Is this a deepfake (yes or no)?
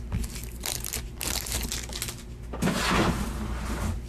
no